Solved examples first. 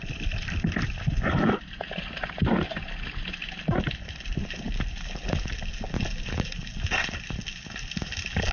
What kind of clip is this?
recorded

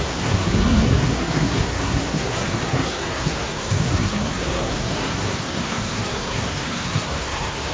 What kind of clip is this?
remade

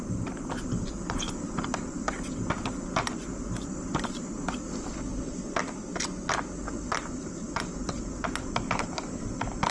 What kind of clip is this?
recorded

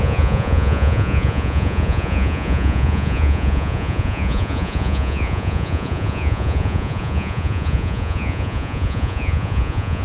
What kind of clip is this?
remade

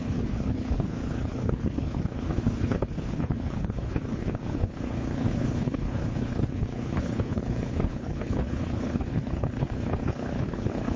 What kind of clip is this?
remade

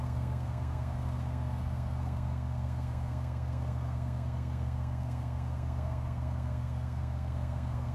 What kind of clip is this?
remade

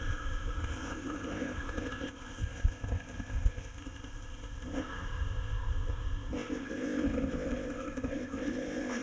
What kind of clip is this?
remade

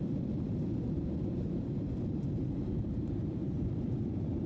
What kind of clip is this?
remade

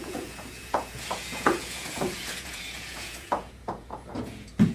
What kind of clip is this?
remade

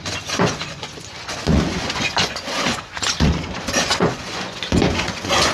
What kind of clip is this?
remade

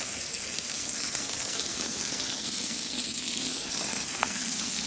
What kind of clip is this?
remade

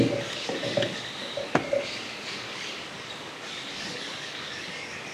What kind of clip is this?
remade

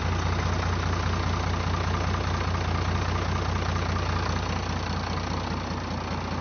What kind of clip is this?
recorded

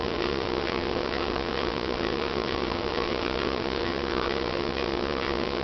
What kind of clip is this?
remade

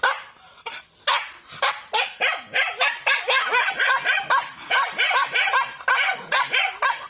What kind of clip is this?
recorded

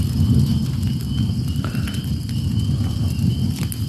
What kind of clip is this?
recorded